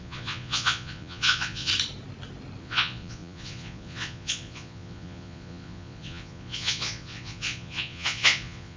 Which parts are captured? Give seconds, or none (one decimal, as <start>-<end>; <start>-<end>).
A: 1.7-2.6

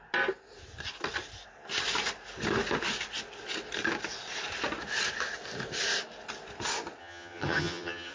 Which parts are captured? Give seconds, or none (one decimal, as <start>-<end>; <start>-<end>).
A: 0.0-7.0